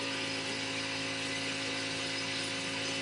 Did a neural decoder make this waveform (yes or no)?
no